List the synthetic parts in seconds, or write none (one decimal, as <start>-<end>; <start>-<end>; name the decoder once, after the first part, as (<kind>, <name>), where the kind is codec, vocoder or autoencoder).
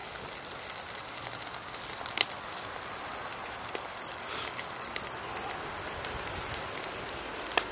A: none